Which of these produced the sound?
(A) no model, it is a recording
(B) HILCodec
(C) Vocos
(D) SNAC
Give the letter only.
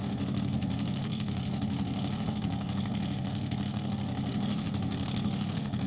D